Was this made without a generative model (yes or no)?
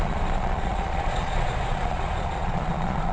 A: no